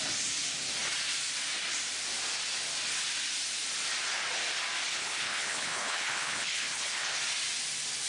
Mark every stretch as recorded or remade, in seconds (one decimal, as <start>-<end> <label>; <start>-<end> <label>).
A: 0.0-4.9 recorded; 4.9-7.1 remade; 7.1-8.1 recorded